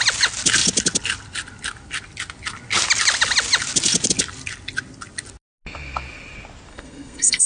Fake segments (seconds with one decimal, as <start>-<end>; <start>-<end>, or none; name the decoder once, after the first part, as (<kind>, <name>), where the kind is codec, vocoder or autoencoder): 6.7-7.5 (codec, SNAC)